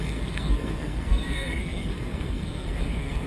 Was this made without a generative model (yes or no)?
no